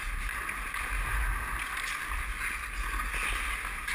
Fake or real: real